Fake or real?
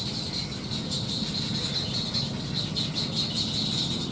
real